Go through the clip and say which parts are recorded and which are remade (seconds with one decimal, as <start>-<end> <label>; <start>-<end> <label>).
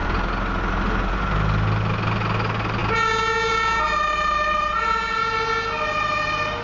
0.0-6.6 recorded